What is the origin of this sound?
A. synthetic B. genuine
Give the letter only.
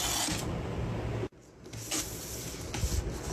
B